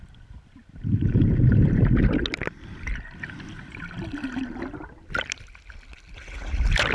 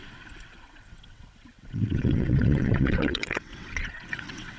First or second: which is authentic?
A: first